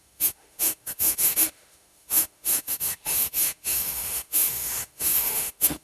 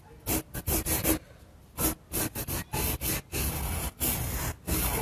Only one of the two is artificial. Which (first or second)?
first